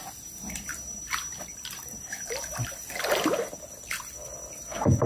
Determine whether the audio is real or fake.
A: real